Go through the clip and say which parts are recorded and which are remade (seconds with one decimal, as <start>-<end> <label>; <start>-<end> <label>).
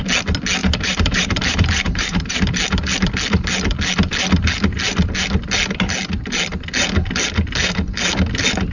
0.0-0.6 recorded; 0.6-2.4 remade; 2.4-8.7 recorded